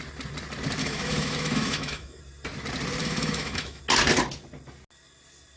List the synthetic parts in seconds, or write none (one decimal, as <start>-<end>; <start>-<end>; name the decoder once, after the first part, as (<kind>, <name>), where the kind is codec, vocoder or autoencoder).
0.8-2.2 (autoencoder, DAC-VAE); 3.0-3.8